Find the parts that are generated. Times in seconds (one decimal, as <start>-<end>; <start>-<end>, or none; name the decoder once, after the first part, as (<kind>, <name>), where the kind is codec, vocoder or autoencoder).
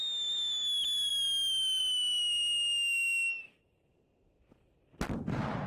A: none